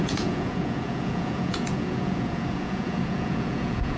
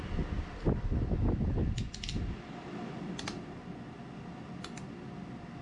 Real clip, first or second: second